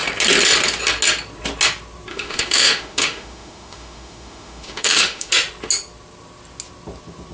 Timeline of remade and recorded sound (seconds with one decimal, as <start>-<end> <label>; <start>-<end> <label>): 0.0-2.1 recorded; 2.1-5.3 remade; 5.3-7.3 recorded